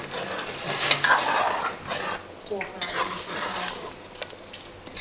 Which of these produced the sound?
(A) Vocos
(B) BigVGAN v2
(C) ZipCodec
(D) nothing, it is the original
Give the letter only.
D